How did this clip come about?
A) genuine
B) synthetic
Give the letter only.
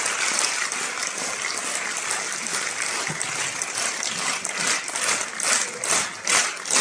A